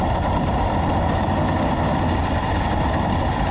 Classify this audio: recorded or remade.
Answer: recorded